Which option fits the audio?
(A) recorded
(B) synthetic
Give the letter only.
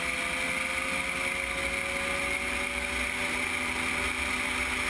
A